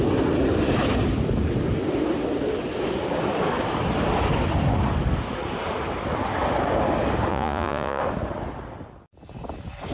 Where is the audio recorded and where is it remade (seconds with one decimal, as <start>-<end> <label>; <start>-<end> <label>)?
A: 0.0-7.3 recorded; 7.3-8.0 remade; 8.0-9.9 recorded